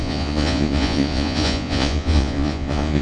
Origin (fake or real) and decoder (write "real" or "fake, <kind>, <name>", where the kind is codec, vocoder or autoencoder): fake, vocoder, Vocos